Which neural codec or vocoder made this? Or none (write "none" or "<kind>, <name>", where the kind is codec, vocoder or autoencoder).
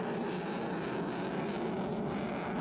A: none